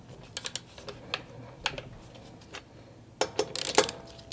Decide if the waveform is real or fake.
real